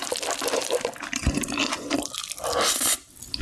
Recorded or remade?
remade